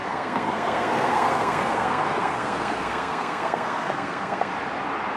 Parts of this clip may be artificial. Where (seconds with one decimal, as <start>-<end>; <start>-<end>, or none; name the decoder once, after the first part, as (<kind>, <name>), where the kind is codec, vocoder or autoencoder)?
0.0-4.5 (codec, SNAC)